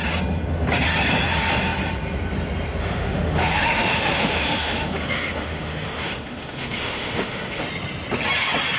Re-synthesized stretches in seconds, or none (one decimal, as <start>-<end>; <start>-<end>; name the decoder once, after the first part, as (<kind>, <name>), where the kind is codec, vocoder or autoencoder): 2.8-7.6 (autoencoder, DAC-VAE)